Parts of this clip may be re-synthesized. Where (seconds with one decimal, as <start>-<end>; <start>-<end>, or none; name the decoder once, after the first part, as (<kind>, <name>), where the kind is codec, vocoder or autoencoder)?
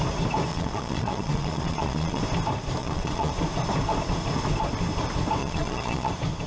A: 0.5-2.2 (vocoder, Vocos); 2.8-3.3; 5.4-6.1